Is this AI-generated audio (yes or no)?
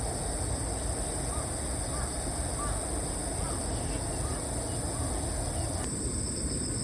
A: no